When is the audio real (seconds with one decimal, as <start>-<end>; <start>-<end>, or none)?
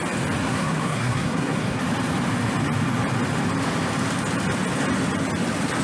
0.0-0.4; 1.8-5.8